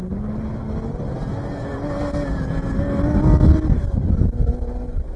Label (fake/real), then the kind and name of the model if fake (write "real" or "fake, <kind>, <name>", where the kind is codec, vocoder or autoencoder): real